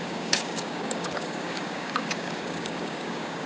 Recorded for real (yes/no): no